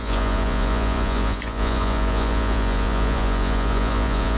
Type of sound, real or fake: fake